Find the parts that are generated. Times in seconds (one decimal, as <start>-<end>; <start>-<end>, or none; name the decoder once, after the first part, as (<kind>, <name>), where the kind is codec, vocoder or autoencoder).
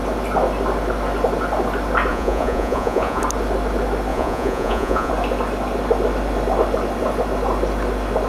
2.1-3.2 (vocoder, Vocos); 4.1-5.1